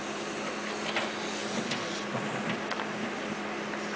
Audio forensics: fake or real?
real